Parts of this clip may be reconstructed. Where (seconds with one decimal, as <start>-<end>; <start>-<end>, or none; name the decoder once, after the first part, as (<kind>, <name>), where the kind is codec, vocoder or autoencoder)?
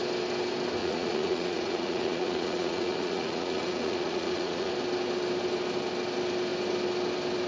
0.8-4.7 (vocoder, Vocos)